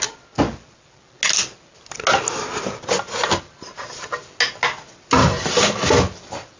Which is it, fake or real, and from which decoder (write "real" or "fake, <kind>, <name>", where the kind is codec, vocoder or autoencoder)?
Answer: real